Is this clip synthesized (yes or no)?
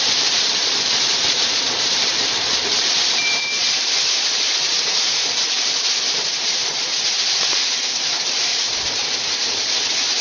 yes